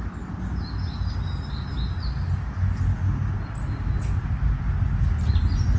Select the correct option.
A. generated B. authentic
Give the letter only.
B